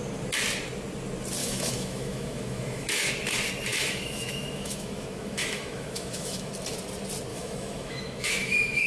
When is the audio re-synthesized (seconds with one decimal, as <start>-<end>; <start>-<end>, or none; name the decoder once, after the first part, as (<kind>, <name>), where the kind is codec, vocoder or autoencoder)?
1.4-3.1 (autoencoder, DAC-VAE); 3.7-6.5; 7.3-8.9